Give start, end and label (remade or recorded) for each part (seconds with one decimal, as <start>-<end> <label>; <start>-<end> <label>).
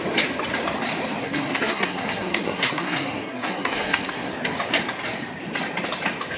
0.0-1.2 recorded; 1.2-4.3 remade; 4.3-6.4 recorded